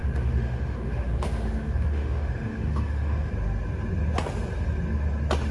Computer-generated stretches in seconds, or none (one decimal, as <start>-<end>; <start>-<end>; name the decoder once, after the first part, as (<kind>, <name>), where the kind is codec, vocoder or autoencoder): 0.0-3.3 (autoencoder, DAC-VAE)